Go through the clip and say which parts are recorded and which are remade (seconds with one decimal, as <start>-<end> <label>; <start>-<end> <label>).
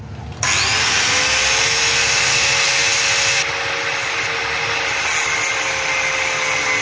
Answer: 0.0-6.8 recorded